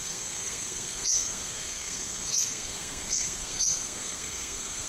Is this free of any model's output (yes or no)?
no